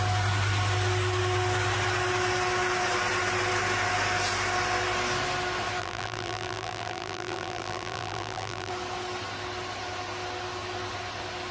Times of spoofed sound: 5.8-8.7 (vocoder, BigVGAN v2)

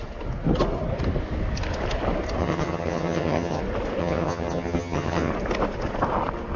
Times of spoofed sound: 2.4-3.6 (vocoder, HiFi-GAN); 4.0-5.3

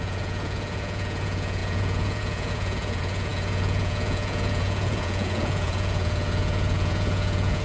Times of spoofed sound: 0.0-7.6 (vocoder, Vocos)

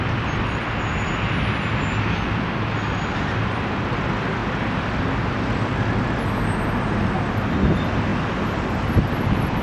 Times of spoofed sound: none

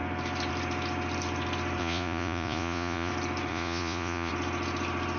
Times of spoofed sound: 1.8-3.1 (vocoder, Vocos); 3.5-4.3